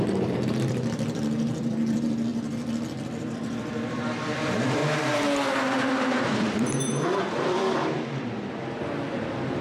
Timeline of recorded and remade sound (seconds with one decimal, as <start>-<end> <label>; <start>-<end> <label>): 0.0-2.3 remade; 2.3-3.0 recorded; 3.0-4.8 remade; 4.8-6.2 recorded; 6.2-9.6 remade